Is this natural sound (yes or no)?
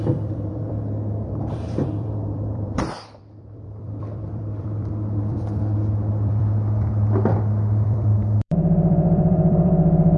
no